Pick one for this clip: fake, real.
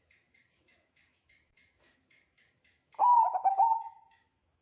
fake